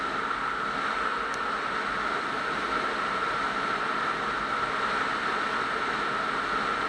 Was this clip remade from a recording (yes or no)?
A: no